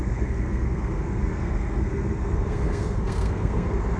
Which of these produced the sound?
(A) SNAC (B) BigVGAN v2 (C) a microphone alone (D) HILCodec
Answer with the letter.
A